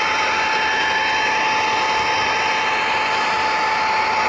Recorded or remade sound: recorded